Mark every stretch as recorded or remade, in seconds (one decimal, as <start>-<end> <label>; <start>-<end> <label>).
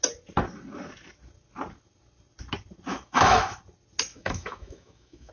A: 0.0-2.9 recorded; 2.9-3.6 remade; 3.6-4.1 recorded; 4.1-5.3 remade